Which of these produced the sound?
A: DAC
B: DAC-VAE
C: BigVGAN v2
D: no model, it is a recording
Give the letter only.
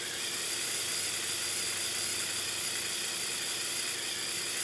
D